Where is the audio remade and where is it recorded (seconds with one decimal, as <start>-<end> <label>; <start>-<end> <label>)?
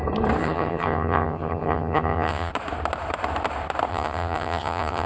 0.0-0.4 recorded; 0.4-2.5 remade; 2.5-3.9 recorded; 3.9-5.1 remade